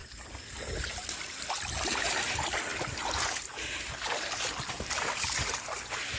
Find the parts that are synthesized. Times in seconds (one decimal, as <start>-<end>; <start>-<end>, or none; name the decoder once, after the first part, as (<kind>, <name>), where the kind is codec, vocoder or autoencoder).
none